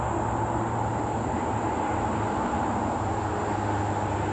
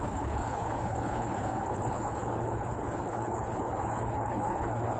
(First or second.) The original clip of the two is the first